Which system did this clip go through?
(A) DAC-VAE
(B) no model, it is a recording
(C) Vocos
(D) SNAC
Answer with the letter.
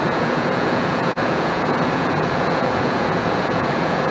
C